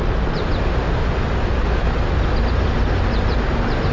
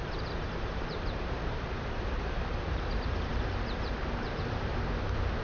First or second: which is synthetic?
second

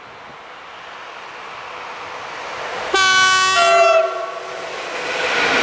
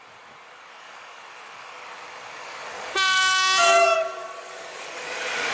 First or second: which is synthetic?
second